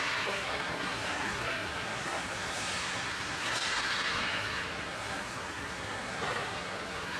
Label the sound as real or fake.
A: fake